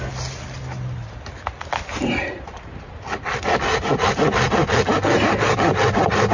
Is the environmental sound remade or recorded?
recorded